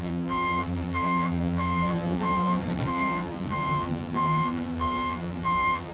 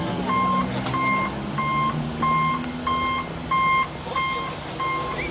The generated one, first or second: first